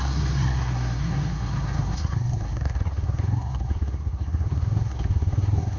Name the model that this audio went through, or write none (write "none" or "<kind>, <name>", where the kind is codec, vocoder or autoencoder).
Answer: codec, SNAC